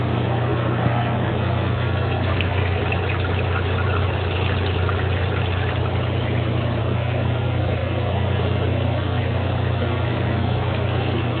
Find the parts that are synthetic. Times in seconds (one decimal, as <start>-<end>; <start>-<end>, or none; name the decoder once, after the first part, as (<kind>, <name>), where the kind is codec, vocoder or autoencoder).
0.0-2.8 (codec, SNAC); 6.8-11.4